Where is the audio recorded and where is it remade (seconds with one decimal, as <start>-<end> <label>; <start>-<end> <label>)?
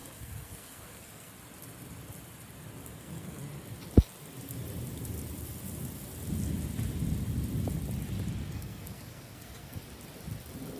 0.0-1.3 remade; 1.3-2.8 recorded; 2.8-3.4 remade; 3.4-8.4 recorded; 8.4-9.8 remade; 9.8-10.8 recorded